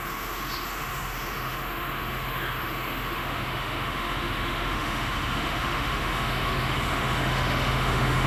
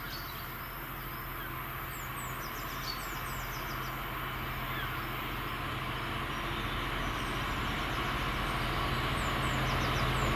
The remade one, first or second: first